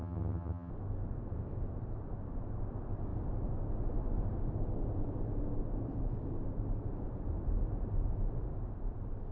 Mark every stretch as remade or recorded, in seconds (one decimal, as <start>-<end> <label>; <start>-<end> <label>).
0.0-0.7 remade; 0.7-9.3 recorded